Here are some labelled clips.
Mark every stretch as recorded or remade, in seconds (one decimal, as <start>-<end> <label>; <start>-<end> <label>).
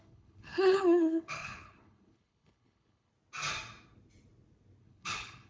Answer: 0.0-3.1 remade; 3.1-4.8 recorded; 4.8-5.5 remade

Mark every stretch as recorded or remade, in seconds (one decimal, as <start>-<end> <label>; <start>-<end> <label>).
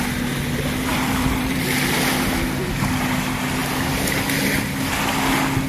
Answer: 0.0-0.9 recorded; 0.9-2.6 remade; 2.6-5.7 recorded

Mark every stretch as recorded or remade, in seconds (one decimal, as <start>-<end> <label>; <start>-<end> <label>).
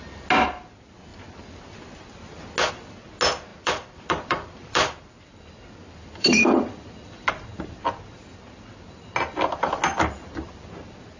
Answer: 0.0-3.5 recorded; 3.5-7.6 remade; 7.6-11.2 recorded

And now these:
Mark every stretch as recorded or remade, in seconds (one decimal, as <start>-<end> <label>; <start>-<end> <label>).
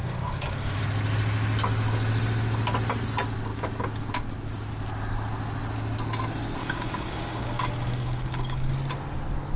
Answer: 0.0-0.8 remade; 0.8-6.6 recorded; 6.6-8.7 remade; 8.7-9.6 recorded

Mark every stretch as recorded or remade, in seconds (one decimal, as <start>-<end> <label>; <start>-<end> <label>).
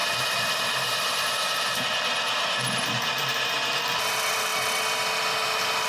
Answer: 0.0-4.5 remade; 4.5-5.3 recorded; 5.3-5.9 remade